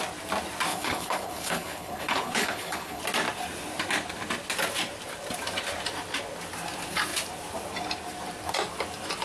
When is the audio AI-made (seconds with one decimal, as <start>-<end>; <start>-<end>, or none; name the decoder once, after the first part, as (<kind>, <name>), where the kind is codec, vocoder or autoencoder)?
0.7-3.0 (codec, HILCodec)